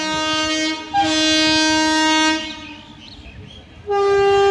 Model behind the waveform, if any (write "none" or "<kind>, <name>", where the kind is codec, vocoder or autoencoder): none